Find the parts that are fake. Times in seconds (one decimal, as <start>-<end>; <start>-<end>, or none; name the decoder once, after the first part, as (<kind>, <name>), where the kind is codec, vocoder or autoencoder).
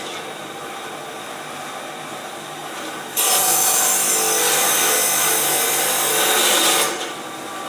2.6-3.9 (vocoder, BigVGAN v2)